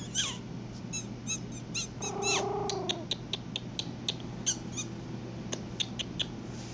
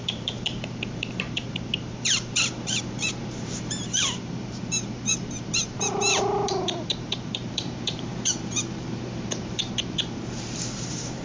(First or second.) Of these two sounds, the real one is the first